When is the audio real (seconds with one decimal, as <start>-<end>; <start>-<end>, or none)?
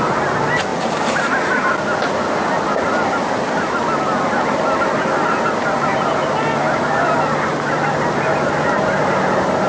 0.0-9.7